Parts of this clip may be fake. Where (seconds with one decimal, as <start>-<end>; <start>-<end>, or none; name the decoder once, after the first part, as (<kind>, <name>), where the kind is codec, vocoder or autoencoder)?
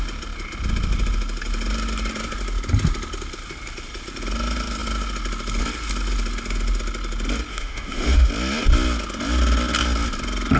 7.5-8.3 (autoencoder, DAC-VAE)